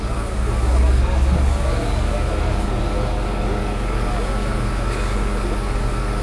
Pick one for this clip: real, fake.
fake